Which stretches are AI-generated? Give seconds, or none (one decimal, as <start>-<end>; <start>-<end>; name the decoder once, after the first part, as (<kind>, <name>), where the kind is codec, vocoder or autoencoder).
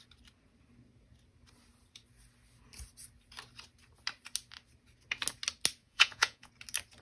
5.8-6.5 (vocoder, Vocos)